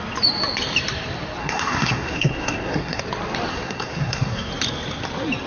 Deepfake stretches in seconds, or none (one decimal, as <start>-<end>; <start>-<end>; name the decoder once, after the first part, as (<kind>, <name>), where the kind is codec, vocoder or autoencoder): 1.4-3.0 (codec, SNAC); 3.5-4.5